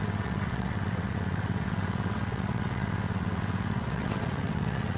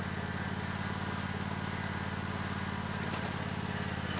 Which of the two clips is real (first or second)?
second